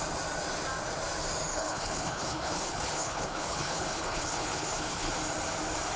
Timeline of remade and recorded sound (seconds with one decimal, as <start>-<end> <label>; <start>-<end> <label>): 0.0-1.5 recorded; 1.5-5.1 remade; 5.1-6.0 recorded